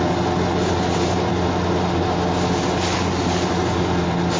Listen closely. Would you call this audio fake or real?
real